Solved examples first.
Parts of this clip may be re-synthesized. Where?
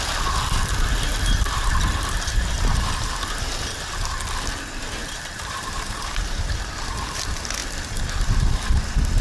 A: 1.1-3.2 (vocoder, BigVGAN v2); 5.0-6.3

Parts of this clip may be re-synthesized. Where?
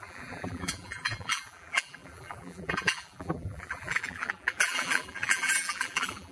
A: 0.0-6.3 (vocoder, BigVGAN v2)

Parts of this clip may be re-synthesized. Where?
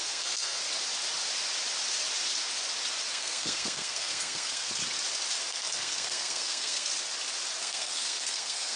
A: 0.0-0.6 (codec, SNAC); 3.1-4.8; 5.5-6.9; 7.6-8.8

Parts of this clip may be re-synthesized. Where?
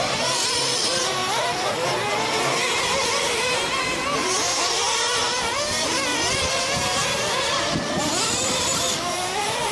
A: 0.0-1.2 (vocoder, BigVGAN v2); 2.8-9.7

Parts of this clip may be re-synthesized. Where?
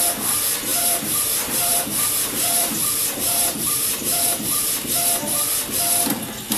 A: 0.7-4.7 (vocoder, BigVGAN v2)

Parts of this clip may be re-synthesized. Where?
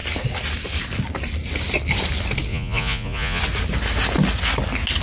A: 2.5-3.4 (vocoder, Vocos)